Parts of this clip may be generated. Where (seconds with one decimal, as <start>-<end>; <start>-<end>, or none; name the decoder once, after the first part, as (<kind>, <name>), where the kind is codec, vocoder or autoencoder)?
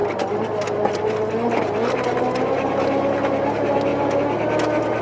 none